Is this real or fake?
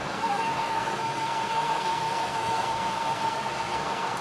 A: fake